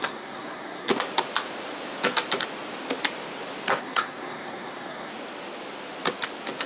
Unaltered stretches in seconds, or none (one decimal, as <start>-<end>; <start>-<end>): 0.9-3.8; 5.1-6.7